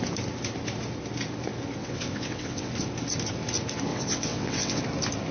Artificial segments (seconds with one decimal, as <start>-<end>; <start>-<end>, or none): 1.8-2.7; 3.9-4.8